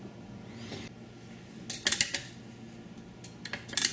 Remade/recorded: recorded